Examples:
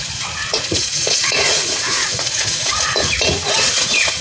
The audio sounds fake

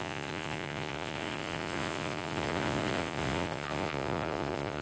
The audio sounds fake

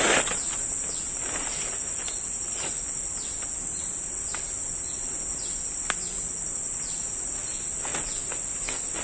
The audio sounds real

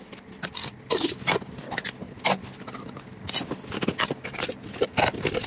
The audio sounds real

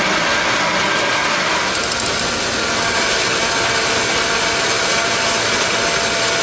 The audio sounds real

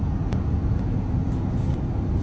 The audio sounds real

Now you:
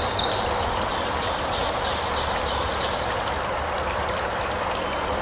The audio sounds real